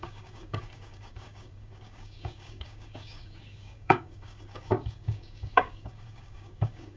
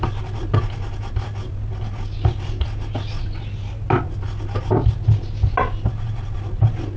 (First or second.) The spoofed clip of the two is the first